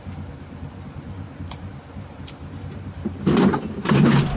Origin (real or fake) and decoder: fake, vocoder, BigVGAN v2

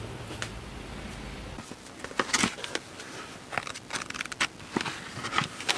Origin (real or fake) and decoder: real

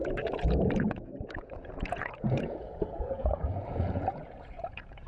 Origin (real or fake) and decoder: fake, vocoder, Vocos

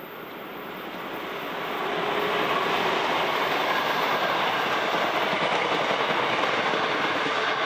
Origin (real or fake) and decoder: real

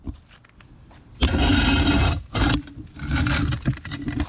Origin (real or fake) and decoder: real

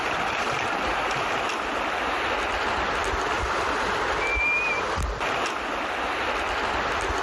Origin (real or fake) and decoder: real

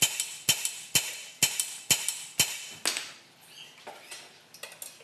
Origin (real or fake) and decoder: real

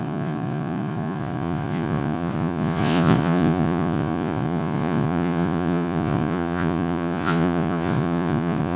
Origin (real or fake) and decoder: fake, vocoder, Vocos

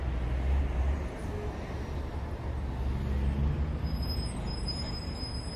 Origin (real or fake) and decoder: real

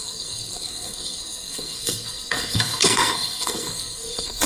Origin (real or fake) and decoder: fake, codec, SNAC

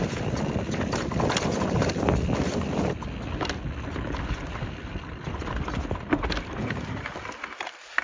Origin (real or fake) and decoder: real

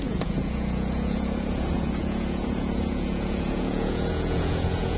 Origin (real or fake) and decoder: fake, vocoder, Vocos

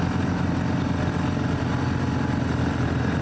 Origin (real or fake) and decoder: real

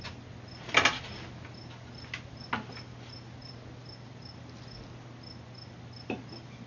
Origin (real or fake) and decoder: real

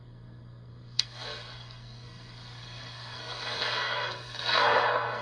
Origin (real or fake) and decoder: fake, codec, SNAC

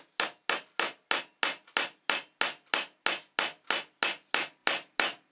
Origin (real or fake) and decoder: real